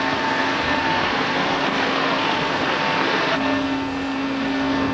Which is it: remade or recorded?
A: remade